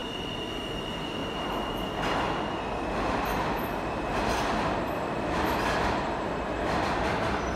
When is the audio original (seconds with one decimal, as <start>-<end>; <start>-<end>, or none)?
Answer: 1.2-4.6